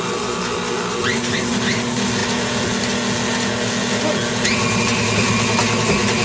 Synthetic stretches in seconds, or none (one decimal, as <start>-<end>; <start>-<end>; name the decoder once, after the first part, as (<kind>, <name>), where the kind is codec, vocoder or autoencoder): none